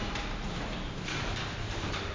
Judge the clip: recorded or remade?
remade